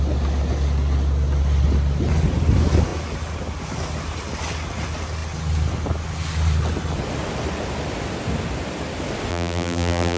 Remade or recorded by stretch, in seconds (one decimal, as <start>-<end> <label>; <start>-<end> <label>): 0.0-9.3 recorded; 9.3-10.2 remade

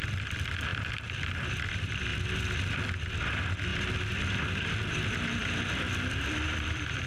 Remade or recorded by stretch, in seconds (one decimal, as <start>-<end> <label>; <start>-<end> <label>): 0.0-2.1 remade; 2.1-3.1 recorded; 3.1-3.7 remade; 3.7-4.7 recorded; 4.7-7.1 remade